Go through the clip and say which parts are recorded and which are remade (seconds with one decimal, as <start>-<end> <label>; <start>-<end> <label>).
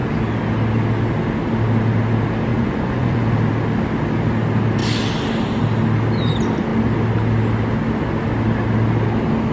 0.0-2.5 recorded; 2.5-3.3 remade; 3.3-9.5 recorded